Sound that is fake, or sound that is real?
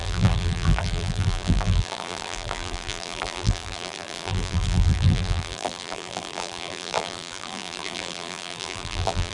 fake